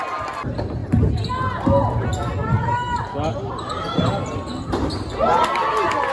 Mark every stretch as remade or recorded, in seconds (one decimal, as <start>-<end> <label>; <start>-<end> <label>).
0.0-6.1 recorded